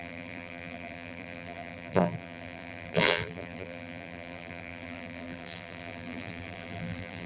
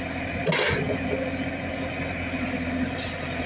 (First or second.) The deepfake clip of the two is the first